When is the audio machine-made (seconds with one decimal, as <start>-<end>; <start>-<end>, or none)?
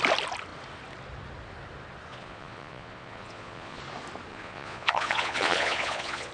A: 2.1-3.8; 4.3-6.3